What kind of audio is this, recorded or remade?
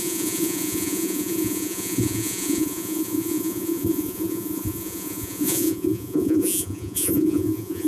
remade